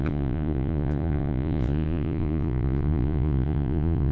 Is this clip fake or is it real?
fake